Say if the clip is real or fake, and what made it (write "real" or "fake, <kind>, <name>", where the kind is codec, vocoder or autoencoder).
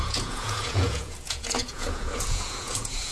fake, vocoder, Vocos